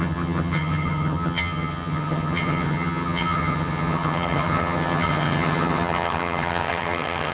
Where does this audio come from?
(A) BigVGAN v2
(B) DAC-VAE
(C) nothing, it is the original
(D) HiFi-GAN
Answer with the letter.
D